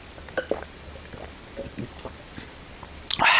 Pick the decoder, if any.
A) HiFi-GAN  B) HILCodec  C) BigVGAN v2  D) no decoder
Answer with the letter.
D